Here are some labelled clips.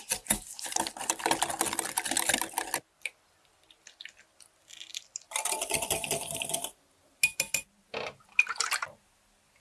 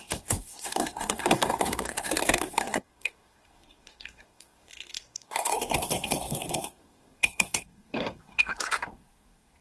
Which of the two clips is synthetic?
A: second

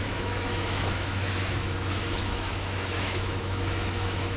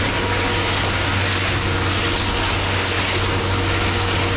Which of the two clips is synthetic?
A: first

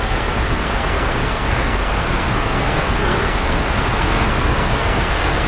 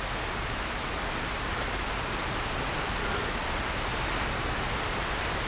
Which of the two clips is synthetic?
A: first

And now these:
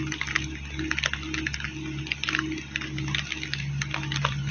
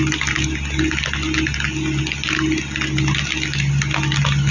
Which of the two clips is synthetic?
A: first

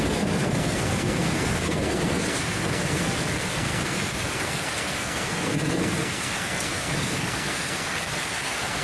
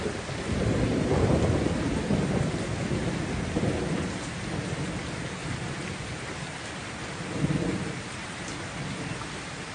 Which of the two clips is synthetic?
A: first